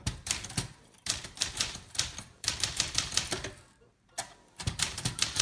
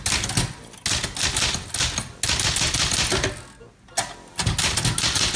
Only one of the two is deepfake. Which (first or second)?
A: first